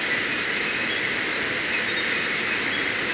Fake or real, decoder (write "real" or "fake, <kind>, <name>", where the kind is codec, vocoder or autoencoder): real